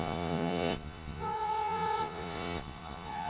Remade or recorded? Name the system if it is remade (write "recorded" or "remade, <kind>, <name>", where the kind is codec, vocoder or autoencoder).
remade, vocoder, Vocos